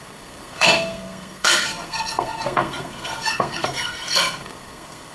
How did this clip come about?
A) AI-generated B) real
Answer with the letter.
A